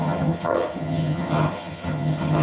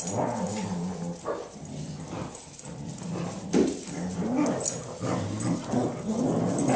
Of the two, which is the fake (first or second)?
first